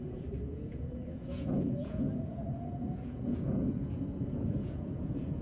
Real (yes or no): no